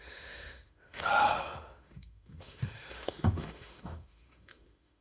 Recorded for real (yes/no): no